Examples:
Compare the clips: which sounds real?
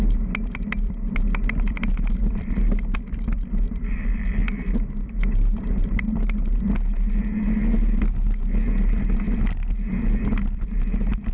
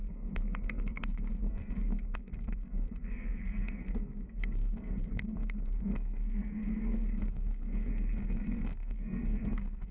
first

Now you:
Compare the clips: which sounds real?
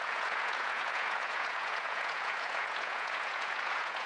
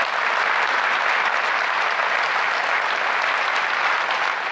second